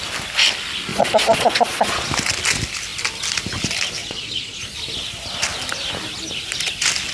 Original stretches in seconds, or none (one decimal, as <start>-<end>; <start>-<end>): 0.0-0.9; 2.1-4.0; 4.6-7.1